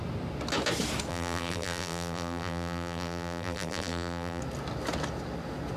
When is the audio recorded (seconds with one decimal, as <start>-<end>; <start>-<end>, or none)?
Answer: 0.0-1.1; 4.4-5.8